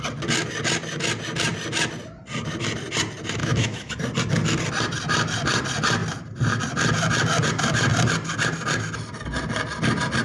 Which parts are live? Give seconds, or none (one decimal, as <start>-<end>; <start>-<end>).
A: 0.0-3.4; 3.9-10.2